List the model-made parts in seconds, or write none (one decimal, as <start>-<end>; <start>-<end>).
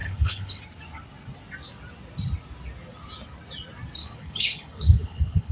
0.0-0.6; 4.0-5.5